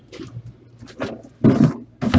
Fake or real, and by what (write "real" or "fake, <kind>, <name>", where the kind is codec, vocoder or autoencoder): real